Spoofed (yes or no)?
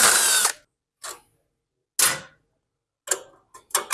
no